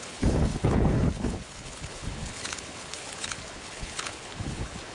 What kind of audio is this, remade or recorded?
remade